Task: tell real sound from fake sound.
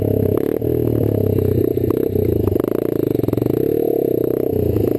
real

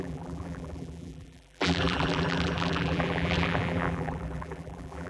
fake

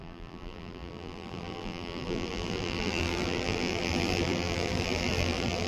fake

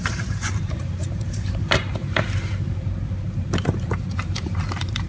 fake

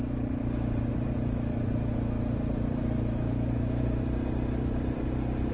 fake